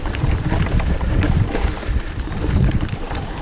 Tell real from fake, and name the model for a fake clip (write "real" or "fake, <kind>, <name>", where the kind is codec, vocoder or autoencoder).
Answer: fake, vocoder, BigVGAN v2